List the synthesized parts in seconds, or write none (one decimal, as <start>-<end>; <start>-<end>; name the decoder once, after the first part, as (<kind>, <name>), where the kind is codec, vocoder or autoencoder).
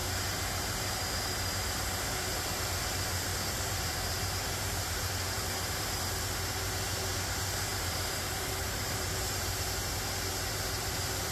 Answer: 0.0-1.0 (vocoder, BigVGAN v2); 3.3-5.2; 7.7-9.5